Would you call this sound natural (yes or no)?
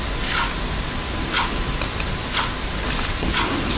yes